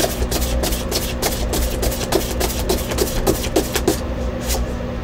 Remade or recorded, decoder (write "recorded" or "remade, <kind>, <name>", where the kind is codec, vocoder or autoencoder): recorded